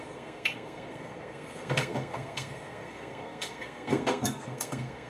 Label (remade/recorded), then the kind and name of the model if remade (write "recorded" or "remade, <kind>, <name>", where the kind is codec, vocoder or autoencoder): remade, codec, SNAC